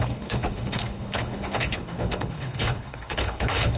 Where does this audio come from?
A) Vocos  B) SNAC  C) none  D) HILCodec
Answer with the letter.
D